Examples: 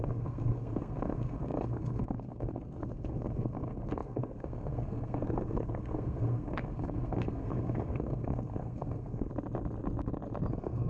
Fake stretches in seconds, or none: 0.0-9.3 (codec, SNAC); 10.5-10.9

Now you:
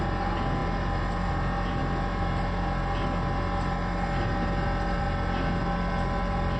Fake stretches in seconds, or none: none